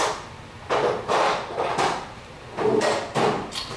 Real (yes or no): yes